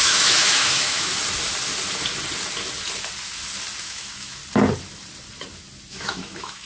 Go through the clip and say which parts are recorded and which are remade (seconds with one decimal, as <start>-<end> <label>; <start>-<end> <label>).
0.0-1.1 remade; 1.1-3.8 recorded; 3.8-4.4 remade; 4.4-5.9 recorded; 5.9-6.7 remade